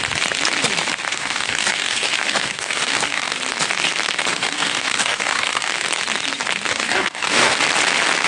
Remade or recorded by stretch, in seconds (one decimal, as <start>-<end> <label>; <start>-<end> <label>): 0.0-1.1 recorded; 1.1-3.3 remade; 3.3-4.3 recorded; 4.3-5.7 remade; 5.7-6.7 recorded; 6.7-7.6 remade; 7.6-8.3 recorded